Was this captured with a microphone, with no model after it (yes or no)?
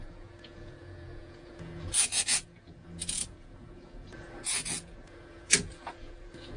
no